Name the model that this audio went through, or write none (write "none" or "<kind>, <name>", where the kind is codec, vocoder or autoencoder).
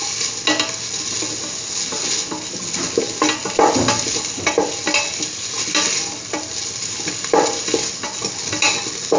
none